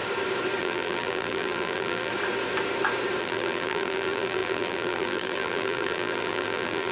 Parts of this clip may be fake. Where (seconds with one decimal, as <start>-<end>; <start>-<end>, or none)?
0.6-2.1; 3.2-6.9